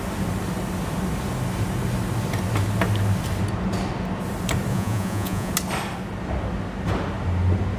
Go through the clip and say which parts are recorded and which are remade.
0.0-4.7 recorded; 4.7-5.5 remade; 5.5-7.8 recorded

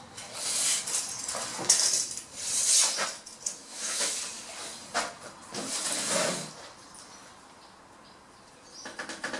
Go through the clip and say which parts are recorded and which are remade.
0.0-3.6 recorded; 3.6-4.2 remade; 4.2-9.4 recorded

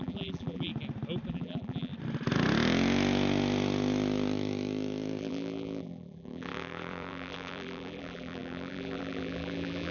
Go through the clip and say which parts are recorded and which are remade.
0.0-0.7 remade; 0.7-1.3 recorded; 1.3-1.9 remade; 1.9-5.2 recorded; 5.2-9.9 remade

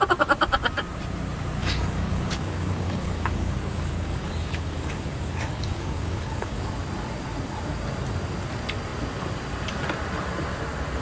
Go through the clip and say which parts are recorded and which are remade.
0.0-1.6 recorded; 1.6-6.7 remade; 6.7-11.0 recorded